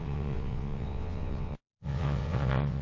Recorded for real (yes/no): no